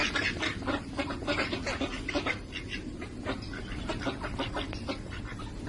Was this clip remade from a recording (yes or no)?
no